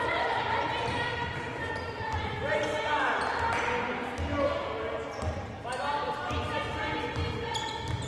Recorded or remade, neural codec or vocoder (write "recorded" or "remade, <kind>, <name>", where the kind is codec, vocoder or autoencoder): recorded